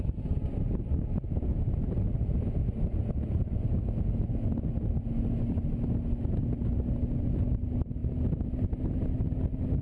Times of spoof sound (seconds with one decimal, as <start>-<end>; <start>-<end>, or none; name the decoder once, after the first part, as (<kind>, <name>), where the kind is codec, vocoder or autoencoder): none

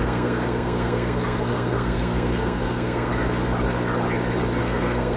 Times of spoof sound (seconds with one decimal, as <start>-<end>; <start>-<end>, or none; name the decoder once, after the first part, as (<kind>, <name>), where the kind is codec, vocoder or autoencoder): 0.0-3.1 (codec, SNAC); 4.6-5.2

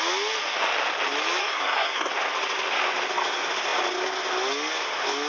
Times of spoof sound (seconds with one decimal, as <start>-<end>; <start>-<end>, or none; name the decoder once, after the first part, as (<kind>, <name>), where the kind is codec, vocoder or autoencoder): 1.4-2.1 (codec, SNAC)

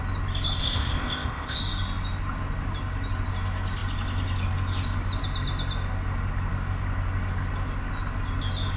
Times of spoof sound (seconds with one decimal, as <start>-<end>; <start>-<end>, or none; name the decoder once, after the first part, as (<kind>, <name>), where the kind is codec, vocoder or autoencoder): 0.6-1.6 (codec, ZipCodec)